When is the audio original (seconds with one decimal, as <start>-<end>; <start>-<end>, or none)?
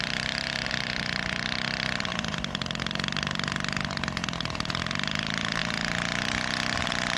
5.6-7.2